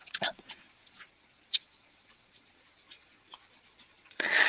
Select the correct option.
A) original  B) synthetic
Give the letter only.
B